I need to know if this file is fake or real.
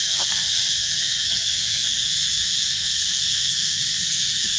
fake